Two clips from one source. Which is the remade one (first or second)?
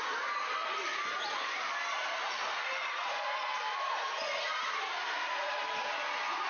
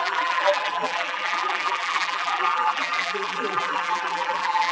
second